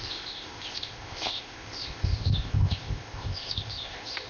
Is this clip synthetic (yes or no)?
yes